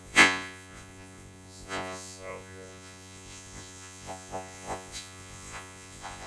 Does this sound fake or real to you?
fake